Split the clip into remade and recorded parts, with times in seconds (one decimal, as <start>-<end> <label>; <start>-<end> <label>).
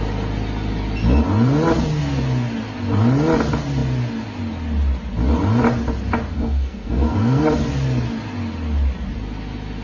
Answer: 0.0-6.3 recorded; 6.3-7.6 remade; 7.6-9.8 recorded